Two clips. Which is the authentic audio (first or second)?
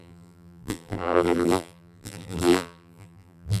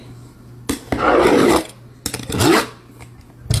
second